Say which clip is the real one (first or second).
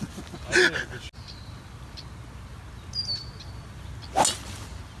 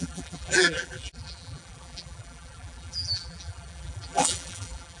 first